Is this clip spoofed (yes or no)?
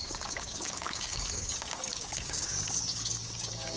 yes